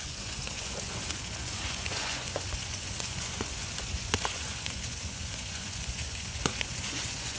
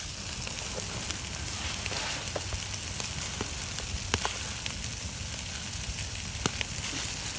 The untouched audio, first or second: second